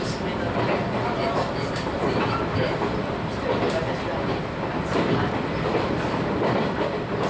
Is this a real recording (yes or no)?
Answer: yes